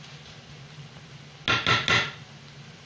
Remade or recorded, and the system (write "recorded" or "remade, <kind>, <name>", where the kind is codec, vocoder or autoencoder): recorded